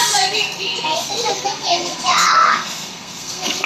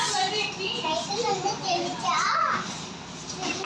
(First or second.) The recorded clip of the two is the second